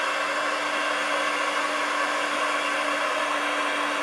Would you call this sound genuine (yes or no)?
yes